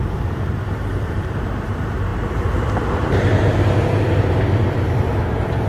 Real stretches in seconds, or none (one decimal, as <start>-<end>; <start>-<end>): none